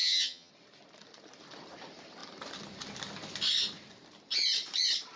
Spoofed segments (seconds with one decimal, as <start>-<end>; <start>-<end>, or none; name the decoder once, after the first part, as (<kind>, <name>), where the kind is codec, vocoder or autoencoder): 0.0-0.5 (vocoder, HiFi-GAN)